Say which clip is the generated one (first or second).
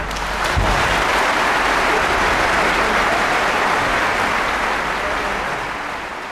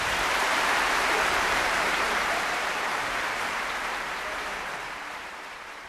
second